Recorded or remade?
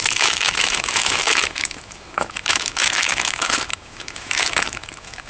remade